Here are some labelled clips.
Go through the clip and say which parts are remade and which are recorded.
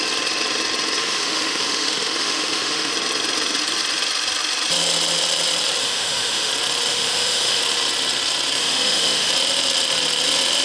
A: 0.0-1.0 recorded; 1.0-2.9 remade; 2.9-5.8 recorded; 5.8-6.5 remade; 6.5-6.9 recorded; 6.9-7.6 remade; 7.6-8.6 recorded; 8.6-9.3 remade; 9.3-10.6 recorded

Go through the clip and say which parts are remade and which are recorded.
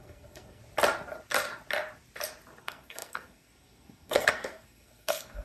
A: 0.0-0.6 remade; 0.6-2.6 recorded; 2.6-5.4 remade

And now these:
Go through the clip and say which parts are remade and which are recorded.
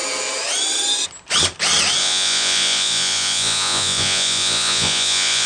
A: 0.0-2.0 recorded; 2.0-5.5 remade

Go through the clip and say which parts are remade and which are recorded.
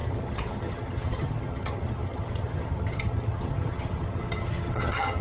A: 0.0-5.2 remade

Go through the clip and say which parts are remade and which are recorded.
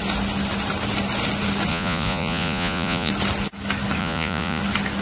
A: 0.0-1.7 recorded; 1.7-3.1 remade; 3.1-4.0 recorded; 4.0-4.6 remade; 4.6-5.0 recorded